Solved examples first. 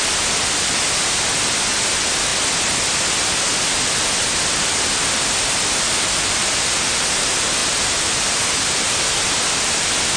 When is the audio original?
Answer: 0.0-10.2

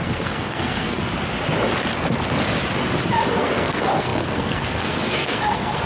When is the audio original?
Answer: 1.0-3.3

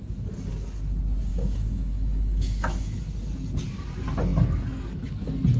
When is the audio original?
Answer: 0.0-1.3; 3.0-5.6

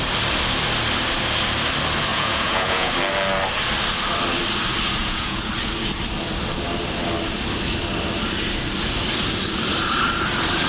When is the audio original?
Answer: 0.0-2.1; 2.9-5.0; 5.5-10.7

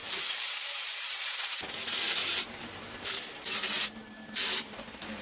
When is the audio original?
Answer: 1.3-2.2; 3.2-3.6

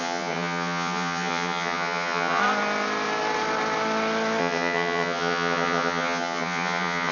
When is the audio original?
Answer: 2.4-4.4

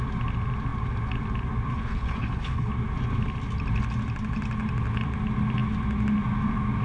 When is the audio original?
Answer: 0.0-1.7; 2.7-6.8

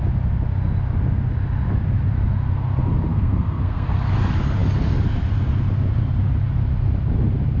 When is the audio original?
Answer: 0.0-3.1; 4.1-7.6